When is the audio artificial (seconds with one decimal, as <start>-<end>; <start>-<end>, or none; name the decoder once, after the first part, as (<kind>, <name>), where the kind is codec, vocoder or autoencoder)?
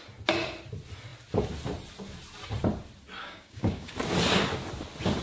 3.2-3.9 (codec, DAC)